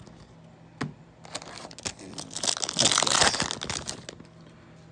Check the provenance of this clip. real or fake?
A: real